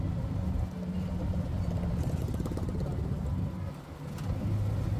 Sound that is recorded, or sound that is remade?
recorded